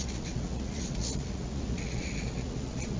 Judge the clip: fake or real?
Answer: fake